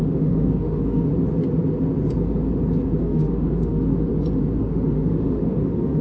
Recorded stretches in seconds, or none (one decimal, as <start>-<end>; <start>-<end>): 1.1-3.0; 4.1-4.6